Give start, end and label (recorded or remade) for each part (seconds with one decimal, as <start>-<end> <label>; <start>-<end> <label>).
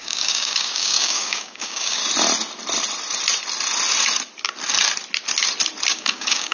0.0-2.0 remade; 2.0-5.9 recorded; 5.9-6.5 remade